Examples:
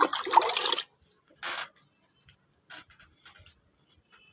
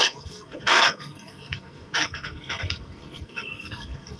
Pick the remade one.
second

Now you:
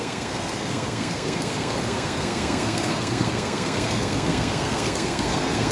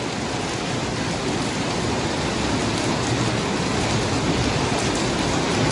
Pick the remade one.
first